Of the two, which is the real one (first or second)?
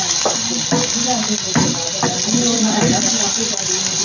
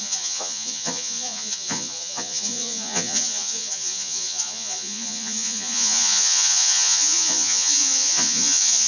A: first